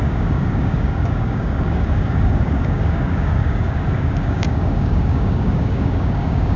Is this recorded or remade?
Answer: remade